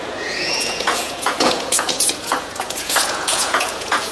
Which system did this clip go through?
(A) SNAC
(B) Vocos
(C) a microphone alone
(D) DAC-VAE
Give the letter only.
B